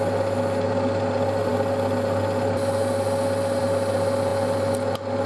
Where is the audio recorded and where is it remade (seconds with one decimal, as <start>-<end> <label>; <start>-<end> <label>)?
0.0-5.3 recorded